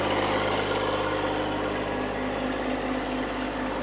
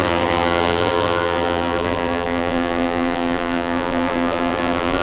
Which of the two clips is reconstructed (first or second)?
second